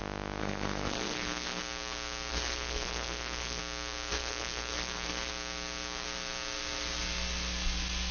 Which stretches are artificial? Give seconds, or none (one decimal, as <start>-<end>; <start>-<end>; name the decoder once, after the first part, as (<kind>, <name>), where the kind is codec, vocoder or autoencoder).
0.4-1.6 (codec, SNAC); 2.3-3.6; 4.1-5.3